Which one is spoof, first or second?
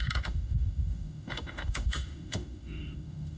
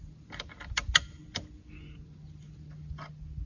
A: first